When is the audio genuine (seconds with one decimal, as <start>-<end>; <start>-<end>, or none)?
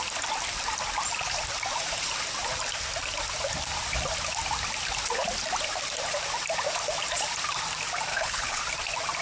0.0-8.1; 8.6-9.2